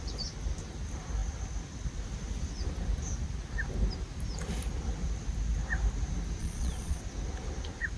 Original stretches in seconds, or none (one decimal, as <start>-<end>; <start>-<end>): 0.0-6.4; 7.0-8.0

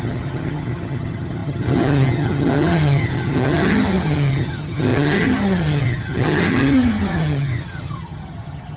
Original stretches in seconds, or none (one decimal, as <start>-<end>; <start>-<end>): none

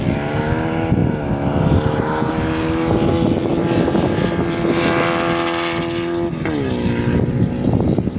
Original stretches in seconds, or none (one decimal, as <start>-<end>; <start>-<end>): 0.0-8.2

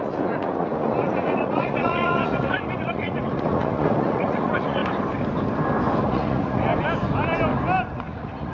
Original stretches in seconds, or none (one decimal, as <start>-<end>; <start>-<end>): 4.8-6.0; 6.7-7.9

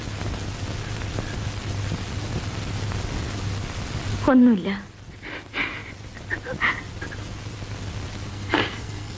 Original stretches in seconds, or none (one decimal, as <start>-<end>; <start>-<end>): 0.0-8.3